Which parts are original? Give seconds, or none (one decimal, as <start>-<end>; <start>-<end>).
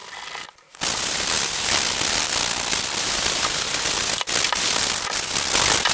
0.0-5.9